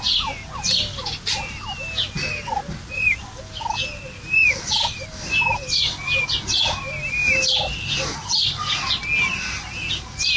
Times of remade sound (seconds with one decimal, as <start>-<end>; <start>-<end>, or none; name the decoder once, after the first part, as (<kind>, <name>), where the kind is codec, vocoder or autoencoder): none